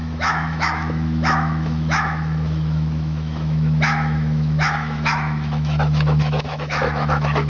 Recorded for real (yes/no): no